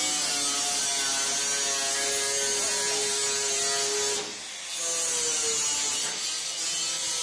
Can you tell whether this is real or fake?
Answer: real